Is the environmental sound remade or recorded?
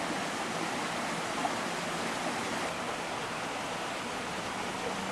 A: recorded